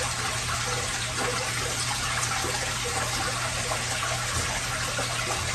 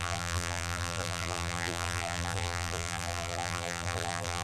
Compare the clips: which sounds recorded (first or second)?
first